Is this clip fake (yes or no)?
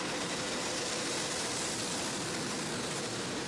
no